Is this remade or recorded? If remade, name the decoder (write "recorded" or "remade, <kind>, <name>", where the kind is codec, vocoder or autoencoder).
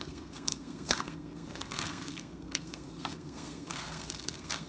remade, codec, SNAC